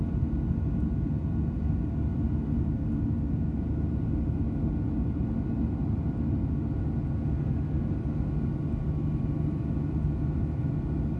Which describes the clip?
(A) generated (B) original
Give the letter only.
B